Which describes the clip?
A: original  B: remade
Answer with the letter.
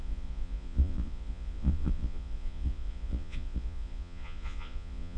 B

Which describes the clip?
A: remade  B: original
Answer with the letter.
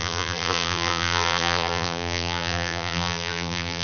A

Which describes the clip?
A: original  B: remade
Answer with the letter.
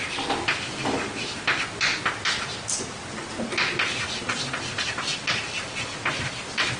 A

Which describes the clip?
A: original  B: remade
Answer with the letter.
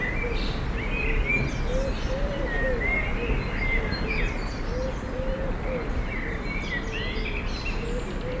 A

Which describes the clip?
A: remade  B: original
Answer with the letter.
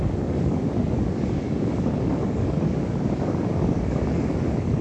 A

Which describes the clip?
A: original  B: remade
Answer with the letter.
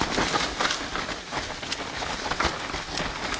B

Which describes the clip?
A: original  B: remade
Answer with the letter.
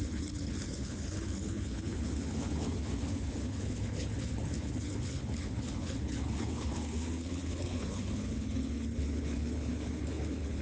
B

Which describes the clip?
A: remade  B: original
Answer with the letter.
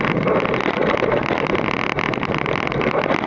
B